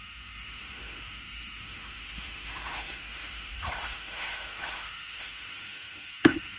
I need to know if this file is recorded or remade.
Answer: remade